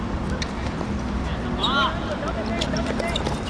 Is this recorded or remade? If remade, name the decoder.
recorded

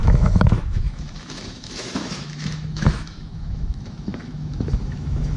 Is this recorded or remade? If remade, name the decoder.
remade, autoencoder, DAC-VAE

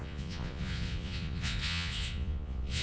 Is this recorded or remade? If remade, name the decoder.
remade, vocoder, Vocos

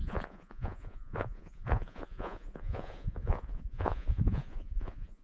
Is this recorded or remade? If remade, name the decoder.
remade, vocoder, Vocos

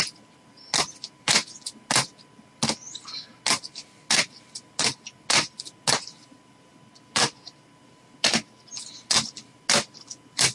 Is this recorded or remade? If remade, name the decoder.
recorded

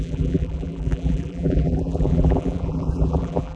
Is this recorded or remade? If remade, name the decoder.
remade, vocoder, BigVGAN v2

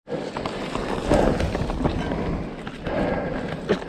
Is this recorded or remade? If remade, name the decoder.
recorded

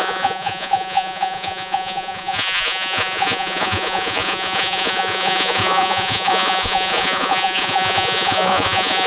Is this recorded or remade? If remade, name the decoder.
remade, vocoder, Vocos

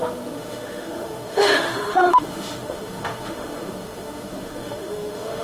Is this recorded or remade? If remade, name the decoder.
remade, autoencoder, DAC-VAE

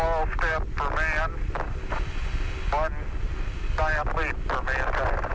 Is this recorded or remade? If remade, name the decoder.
recorded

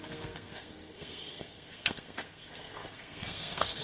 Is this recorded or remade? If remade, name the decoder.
remade, codec, SNAC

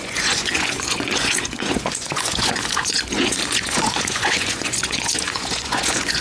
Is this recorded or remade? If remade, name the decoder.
remade, vocoder, Vocos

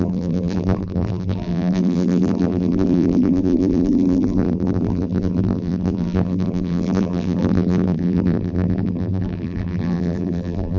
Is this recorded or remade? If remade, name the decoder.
remade, vocoder, BigVGAN v2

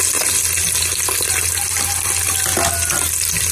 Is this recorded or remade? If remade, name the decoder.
recorded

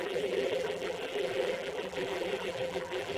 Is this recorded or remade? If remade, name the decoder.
remade, vocoder, BigVGAN v2